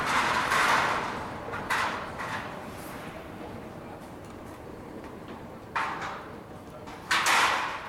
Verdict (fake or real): fake